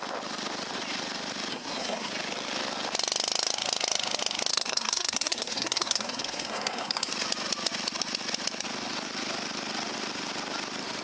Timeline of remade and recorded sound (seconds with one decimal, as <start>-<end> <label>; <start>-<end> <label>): 0.0-1.5 recorded; 1.5-2.1 remade; 2.1-4.5 recorded; 4.5-7.1 remade; 7.1-11.0 recorded